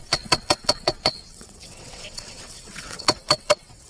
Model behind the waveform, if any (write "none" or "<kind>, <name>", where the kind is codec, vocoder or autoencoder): vocoder, WaveNeXt